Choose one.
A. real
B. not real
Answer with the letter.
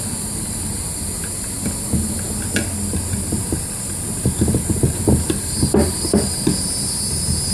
A